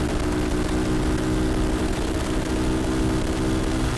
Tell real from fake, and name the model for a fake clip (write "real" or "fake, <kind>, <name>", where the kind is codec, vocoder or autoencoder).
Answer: real